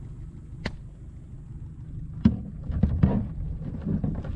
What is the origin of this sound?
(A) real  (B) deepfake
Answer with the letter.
A